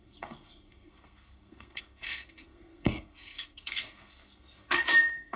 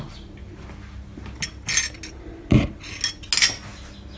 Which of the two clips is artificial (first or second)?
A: first